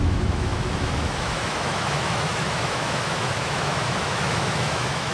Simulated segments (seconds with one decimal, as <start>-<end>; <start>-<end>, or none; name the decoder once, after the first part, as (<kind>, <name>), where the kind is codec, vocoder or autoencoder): 0.0-5.1 (autoencoder, DAC-VAE)